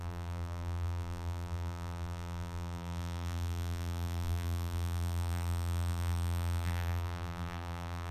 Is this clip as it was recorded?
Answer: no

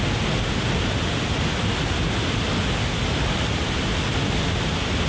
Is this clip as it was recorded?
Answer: yes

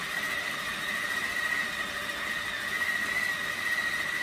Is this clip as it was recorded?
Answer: yes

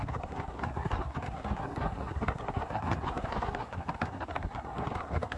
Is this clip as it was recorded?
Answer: no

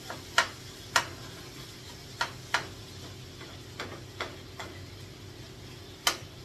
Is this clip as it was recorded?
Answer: yes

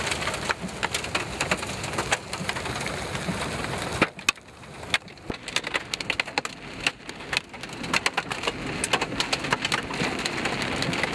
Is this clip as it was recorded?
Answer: yes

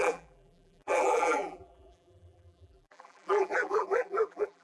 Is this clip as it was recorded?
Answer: no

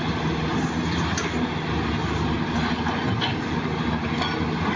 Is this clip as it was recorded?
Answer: yes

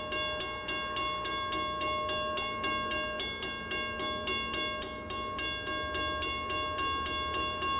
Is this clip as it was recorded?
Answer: yes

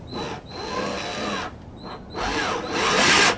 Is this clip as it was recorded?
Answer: yes